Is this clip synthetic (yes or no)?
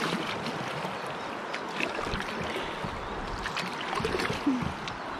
no